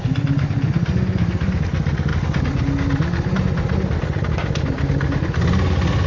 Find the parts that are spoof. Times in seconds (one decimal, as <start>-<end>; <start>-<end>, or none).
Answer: none